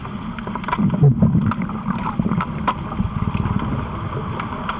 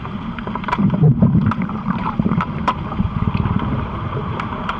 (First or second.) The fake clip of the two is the second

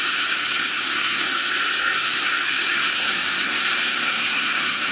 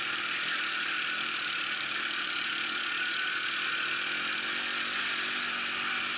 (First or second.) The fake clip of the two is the first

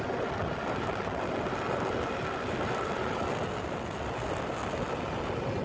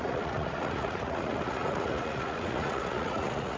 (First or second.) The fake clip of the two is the second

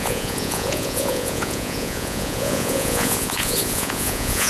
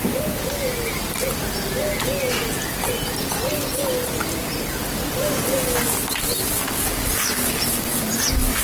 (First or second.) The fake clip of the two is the first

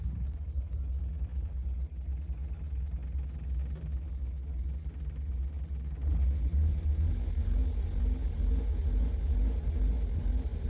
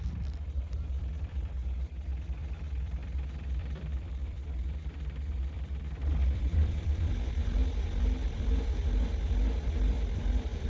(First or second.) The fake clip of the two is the second